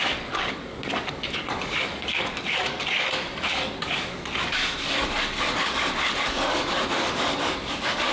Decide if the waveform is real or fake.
fake